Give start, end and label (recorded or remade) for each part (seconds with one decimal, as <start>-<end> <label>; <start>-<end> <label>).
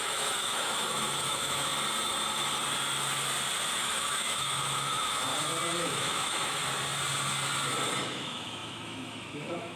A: 0.0-1.7 remade; 1.7-3.8 recorded; 3.8-5.3 remade; 5.3-5.8 recorded; 5.8-6.6 remade; 6.6-8.1 recorded; 8.1-9.8 remade